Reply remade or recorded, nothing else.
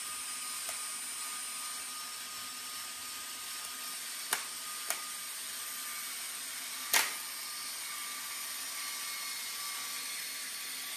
recorded